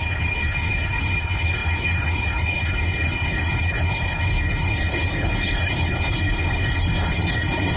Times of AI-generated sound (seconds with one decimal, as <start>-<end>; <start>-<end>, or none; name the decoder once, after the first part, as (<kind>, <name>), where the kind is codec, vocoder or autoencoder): 0.0-7.8 (codec, HILCodec)